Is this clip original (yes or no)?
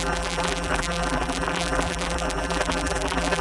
no